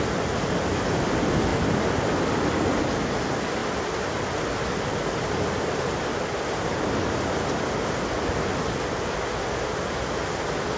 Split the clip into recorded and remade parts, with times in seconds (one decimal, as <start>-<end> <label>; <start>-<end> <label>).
0.0-10.8 recorded